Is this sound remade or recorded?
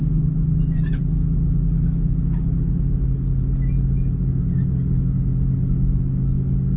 recorded